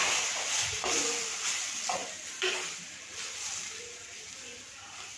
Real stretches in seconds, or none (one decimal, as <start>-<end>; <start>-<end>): 1.2-2.0

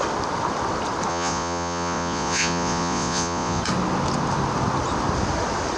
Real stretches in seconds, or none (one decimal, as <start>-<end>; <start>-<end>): 0.0-1.1; 3.6-5.8

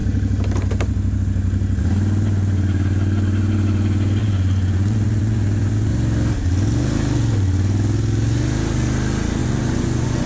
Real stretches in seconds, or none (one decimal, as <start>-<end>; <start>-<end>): 0.0-4.2; 5.9-9.4